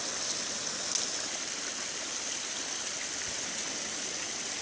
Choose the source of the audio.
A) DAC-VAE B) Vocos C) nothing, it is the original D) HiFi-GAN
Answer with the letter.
C